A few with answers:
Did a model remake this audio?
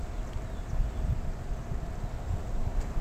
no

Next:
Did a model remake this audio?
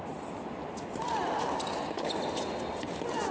no